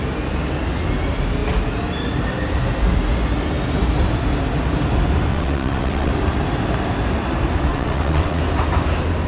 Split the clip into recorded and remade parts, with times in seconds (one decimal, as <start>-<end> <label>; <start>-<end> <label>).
0.0-5.3 recorded; 5.3-6.1 remade; 6.1-7.7 recorded; 7.7-8.4 remade; 8.4-9.3 recorded